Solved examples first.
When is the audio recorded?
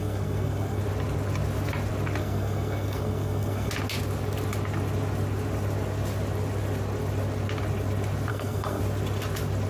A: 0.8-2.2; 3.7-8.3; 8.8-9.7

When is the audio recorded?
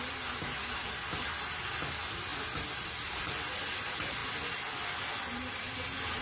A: 0.0-6.2